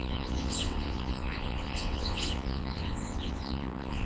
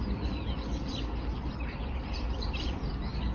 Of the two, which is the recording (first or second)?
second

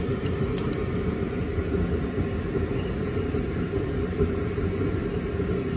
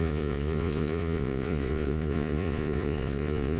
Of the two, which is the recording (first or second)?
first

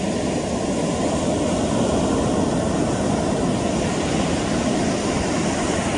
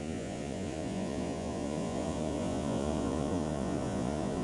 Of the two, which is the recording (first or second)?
first